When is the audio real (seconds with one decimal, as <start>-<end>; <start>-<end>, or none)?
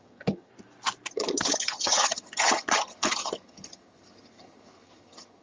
0.5-1.1